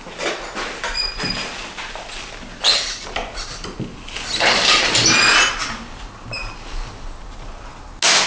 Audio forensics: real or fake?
real